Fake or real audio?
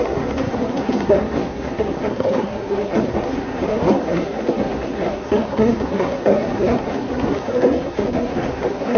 fake